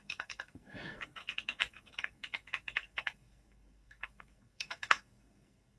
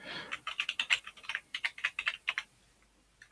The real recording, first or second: second